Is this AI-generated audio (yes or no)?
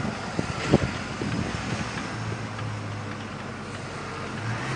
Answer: no